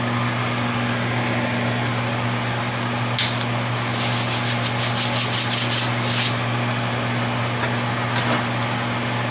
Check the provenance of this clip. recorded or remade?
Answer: recorded